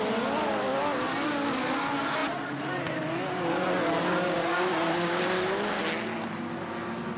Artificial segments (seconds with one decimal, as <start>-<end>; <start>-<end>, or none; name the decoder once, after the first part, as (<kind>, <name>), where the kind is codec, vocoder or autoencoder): 4.4-5.8 (codec, DAC)